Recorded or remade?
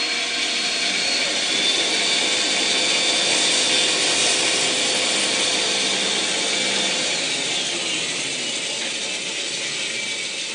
recorded